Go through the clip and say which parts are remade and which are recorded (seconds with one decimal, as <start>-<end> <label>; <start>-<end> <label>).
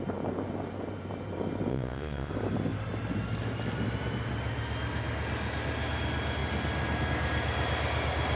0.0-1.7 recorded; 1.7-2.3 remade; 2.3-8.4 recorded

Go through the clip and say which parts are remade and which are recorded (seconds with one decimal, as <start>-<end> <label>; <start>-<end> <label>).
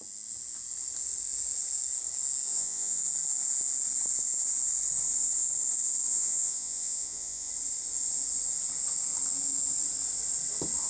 0.0-2.5 recorded; 2.5-3.0 remade; 3.0-6.1 recorded; 6.1-7.5 remade; 7.5-10.9 recorded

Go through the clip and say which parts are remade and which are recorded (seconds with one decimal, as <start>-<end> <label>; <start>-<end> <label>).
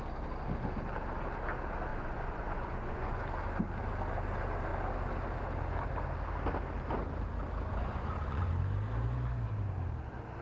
0.0-1.9 recorded; 1.9-3.2 remade; 3.2-7.7 recorded; 7.7-8.5 remade; 8.5-10.4 recorded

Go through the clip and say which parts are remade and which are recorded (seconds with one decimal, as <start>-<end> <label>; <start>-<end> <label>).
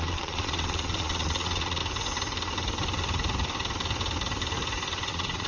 0.0-1.8 remade; 1.8-5.1 recorded; 5.1-5.5 remade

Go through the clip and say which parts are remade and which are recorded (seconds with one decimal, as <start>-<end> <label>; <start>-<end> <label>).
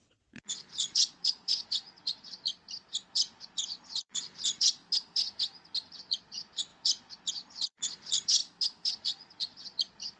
0.0-2.5 remade; 2.5-3.1 recorded; 3.1-4.8 remade; 4.8-6.0 recorded; 6.0-8.4 remade; 8.4-8.9 recorded; 8.9-10.2 remade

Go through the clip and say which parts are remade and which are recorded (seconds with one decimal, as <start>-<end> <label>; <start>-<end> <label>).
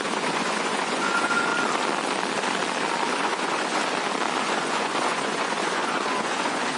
0.0-1.5 remade; 1.5-3.1 recorded; 3.1-3.8 remade; 3.8-4.4 recorded; 4.4-6.8 remade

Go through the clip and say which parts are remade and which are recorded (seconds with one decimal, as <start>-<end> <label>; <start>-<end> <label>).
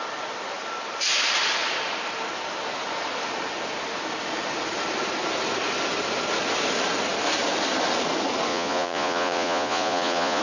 0.0-8.5 recorded; 8.5-10.4 remade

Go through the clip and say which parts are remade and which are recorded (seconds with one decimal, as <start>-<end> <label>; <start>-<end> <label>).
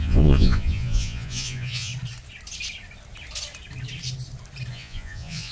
0.0-1.9 remade; 1.9-4.7 recorded; 4.7-5.5 remade